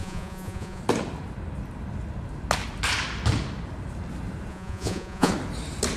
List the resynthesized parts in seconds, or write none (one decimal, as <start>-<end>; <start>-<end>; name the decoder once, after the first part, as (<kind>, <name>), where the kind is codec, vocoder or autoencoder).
0.0-0.8 (vocoder, Vocos); 4.5-5.3